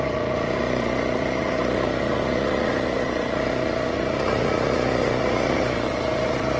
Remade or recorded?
remade